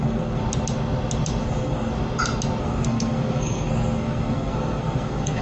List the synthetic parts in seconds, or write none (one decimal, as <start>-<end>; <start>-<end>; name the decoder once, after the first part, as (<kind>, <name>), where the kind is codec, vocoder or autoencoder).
0.0-0.4 (codec, SNAC); 1.4-1.9; 2.6-5.4